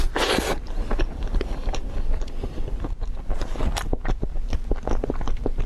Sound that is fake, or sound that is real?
real